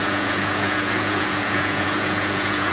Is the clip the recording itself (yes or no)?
no